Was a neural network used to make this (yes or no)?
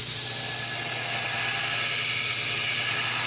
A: no